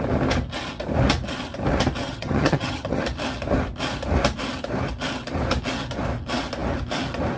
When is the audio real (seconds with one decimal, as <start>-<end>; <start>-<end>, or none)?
0.0-2.0; 3.0-7.4